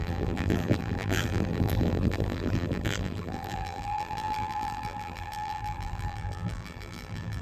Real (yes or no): no